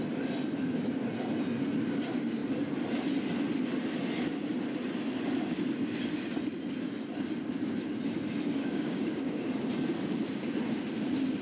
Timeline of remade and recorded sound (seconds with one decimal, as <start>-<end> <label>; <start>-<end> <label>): 0.0-8.6 recorded; 8.6-9.7 remade; 9.7-11.4 recorded